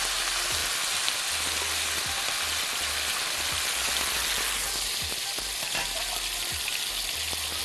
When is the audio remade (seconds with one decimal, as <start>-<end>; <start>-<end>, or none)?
none